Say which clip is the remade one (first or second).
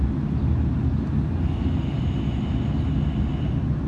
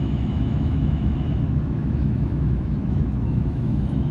second